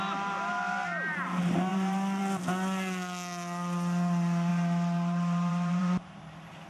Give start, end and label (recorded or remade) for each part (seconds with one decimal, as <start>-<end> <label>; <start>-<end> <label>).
0.0-1.7 recorded; 1.7-2.2 remade; 2.2-4.5 recorded; 4.5-6.2 remade; 6.2-6.7 recorded